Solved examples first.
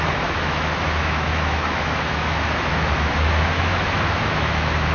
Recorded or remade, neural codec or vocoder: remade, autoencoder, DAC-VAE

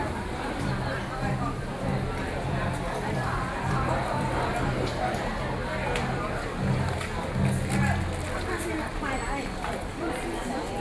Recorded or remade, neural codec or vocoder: recorded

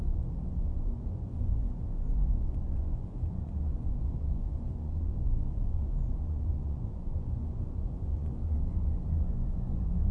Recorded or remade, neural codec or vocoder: remade, vocoder, Vocos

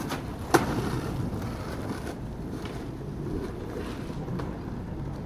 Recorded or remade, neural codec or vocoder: recorded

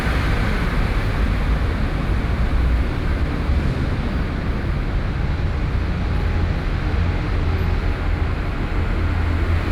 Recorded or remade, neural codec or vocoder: recorded